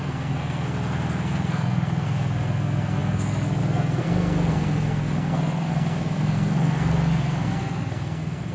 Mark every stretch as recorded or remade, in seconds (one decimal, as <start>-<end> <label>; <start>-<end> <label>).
0.0-8.5 remade